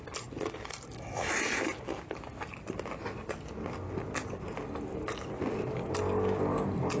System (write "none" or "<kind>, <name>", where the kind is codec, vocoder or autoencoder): none